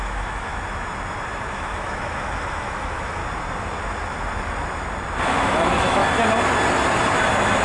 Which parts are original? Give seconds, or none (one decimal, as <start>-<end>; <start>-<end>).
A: 0.5-1.5; 3.2-5.3; 6.0-7.6